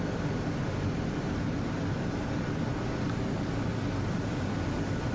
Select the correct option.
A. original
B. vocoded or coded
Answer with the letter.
A